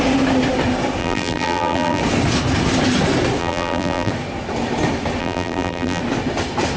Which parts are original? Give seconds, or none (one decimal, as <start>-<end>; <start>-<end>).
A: 0.0-1.0; 2.0-3.4; 4.1-5.2; 6.0-6.8